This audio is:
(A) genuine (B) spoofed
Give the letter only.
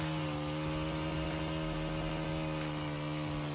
A